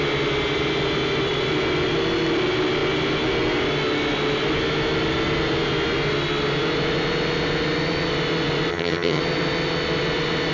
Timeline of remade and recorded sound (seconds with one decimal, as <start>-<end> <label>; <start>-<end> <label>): 0.0-8.7 recorded; 8.7-9.2 remade; 9.2-10.5 recorded